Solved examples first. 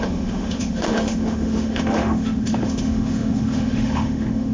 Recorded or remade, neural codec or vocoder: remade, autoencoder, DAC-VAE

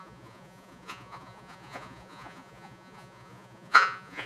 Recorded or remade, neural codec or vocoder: remade, vocoder, Vocos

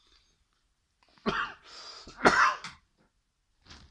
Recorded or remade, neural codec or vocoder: recorded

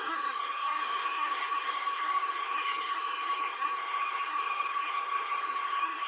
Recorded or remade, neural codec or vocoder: remade, codec, SNAC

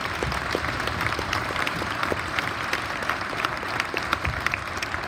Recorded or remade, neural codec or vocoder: remade, vocoder, BigVGAN v2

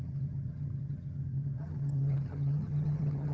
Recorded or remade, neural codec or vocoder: remade, vocoder, HiFi-GAN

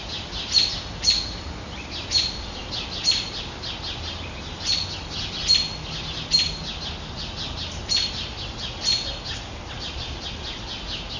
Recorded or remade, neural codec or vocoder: recorded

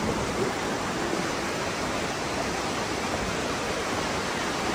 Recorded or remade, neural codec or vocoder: recorded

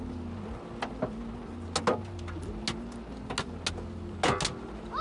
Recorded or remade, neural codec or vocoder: recorded